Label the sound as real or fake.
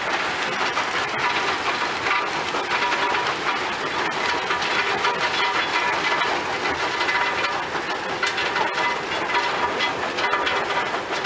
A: real